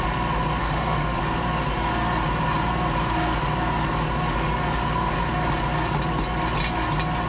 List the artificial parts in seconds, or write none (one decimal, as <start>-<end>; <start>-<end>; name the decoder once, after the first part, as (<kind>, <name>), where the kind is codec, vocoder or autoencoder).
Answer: 0.6-1.2 (autoencoder, DAC-VAE)